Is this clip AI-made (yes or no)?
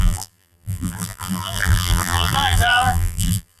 yes